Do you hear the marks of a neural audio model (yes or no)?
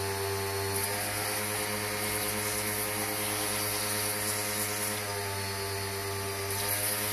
no